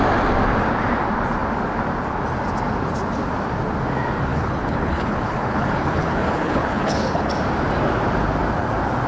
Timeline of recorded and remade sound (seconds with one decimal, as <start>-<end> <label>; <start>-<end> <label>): 0.0-4.3 recorded; 4.3-7.3 remade; 7.3-9.1 recorded